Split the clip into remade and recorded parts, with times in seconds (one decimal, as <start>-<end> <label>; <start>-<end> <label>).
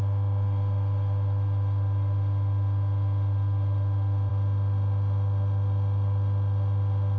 0.0-7.2 remade